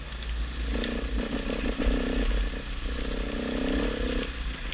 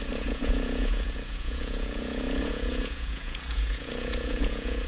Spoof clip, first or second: second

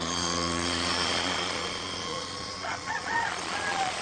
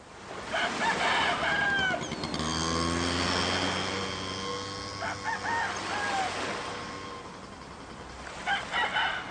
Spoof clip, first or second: first